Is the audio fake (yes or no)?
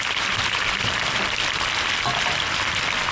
no